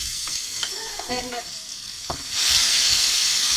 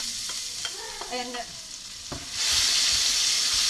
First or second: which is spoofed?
first